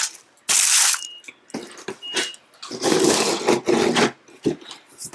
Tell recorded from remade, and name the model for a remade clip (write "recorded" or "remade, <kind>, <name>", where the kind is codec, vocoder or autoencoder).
recorded